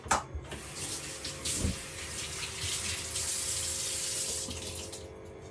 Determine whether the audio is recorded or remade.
recorded